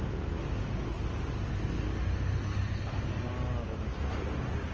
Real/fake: real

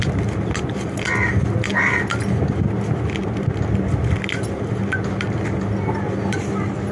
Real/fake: real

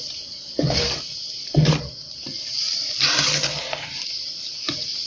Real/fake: real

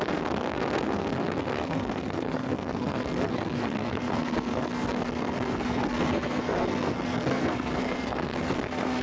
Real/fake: fake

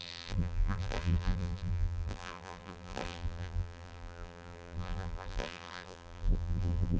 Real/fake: fake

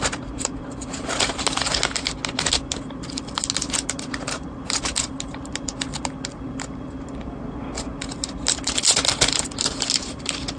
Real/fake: real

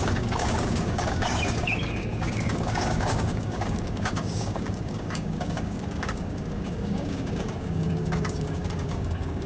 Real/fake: fake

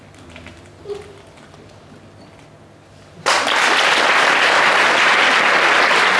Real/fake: real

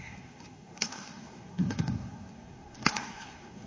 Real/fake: fake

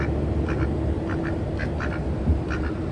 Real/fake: real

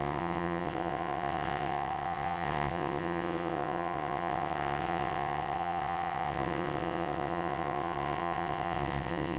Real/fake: fake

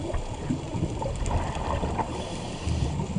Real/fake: fake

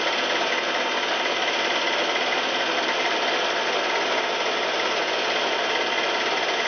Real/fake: real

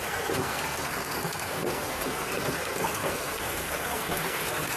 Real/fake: fake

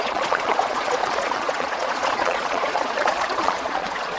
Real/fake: fake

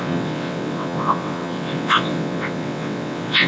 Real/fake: fake